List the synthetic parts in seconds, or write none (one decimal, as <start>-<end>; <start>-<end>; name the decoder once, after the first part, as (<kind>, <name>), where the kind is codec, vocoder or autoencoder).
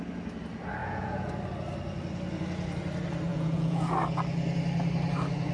0.8-1.3 (vocoder, Vocos); 3.3-3.9